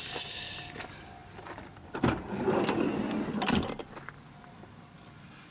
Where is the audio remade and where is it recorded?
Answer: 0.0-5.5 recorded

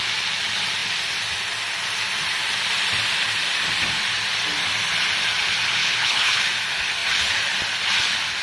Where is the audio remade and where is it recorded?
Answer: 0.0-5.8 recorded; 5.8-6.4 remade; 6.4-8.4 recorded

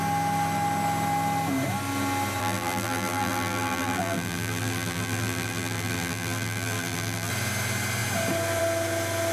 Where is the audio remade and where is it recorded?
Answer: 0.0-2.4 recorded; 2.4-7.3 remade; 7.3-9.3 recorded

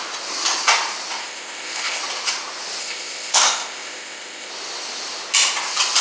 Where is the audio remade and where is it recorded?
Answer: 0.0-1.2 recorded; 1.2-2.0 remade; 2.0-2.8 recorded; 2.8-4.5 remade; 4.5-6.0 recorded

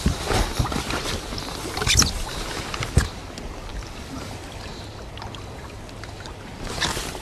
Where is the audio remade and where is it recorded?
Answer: 0.0-3.7 recorded; 3.7-4.6 remade; 4.6-7.2 recorded

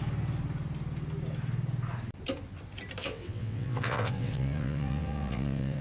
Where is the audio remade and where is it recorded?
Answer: 0.0-3.0 recorded; 3.0-5.8 remade

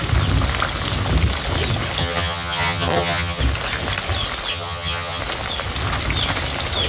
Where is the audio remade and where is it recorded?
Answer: 0.0-2.0 recorded; 2.0-3.4 remade; 3.4-4.5 recorded; 4.5-5.2 remade; 5.2-6.9 recorded